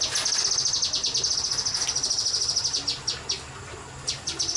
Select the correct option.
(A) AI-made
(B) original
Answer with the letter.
B